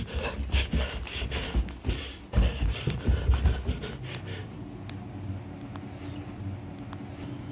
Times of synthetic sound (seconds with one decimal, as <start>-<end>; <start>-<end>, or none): none